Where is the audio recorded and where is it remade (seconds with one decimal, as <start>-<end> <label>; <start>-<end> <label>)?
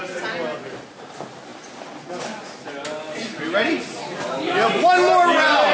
0.0-5.7 recorded